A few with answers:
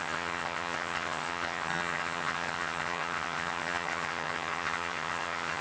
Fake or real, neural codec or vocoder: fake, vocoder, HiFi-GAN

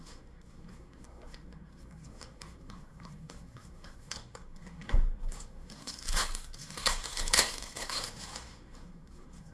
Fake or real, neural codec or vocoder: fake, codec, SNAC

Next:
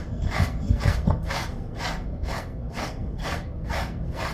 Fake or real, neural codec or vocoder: fake, codec, SNAC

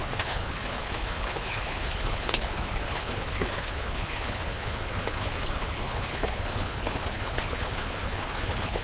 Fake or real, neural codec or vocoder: fake, codec, HILCodec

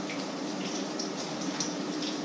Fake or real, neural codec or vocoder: fake, vocoder, BigVGAN v2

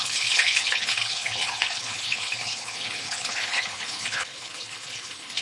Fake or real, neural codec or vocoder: fake, codec, HILCodec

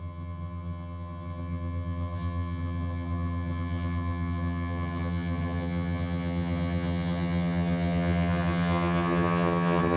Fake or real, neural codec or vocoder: fake, vocoder, HiFi-GAN